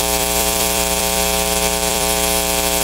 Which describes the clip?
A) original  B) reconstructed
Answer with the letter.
B